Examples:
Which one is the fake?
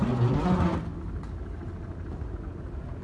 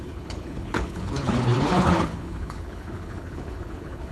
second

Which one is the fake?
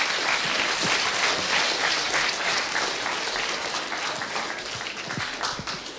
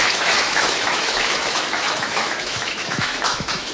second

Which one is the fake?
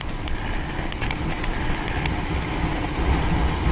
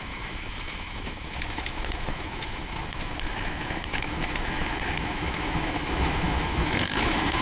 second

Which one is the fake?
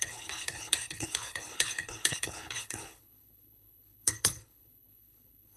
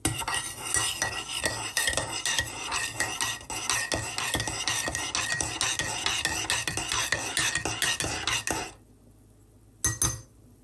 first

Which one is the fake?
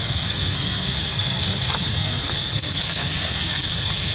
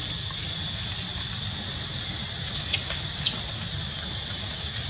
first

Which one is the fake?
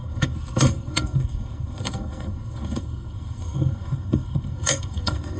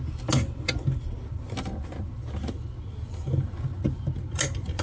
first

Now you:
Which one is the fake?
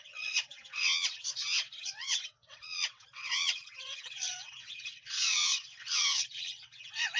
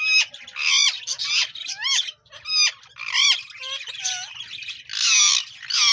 first